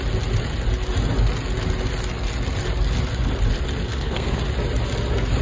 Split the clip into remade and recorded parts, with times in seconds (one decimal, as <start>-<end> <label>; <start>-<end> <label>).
0.0-3.9 recorded; 3.9-4.4 remade; 4.4-5.4 recorded